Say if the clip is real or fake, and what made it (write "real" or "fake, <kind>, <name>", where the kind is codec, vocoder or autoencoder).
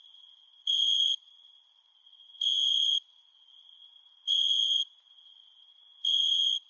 fake, vocoder, Vocos